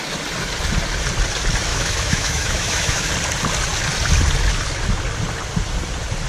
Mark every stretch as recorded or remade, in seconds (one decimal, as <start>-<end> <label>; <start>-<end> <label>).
0.0-1.7 recorded; 1.7-3.1 remade; 3.1-6.3 recorded